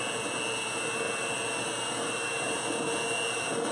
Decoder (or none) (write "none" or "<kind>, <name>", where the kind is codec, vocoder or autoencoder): none